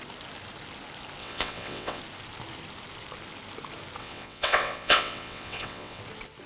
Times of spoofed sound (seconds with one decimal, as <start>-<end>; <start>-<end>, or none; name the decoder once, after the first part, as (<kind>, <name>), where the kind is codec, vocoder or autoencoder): 1.2-2.0 (vocoder, WaveNeXt); 4.0-6.0